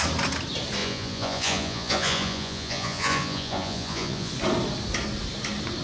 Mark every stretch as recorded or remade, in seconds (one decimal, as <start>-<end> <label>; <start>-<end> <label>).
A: 0.0-0.8 recorded; 0.8-4.3 remade; 4.3-5.8 recorded